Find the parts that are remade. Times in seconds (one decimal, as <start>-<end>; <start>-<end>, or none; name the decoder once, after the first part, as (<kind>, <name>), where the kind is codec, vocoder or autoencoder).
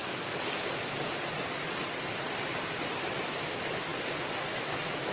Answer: 3.1-3.9 (autoencoder, DAC-VAE); 4.5-5.1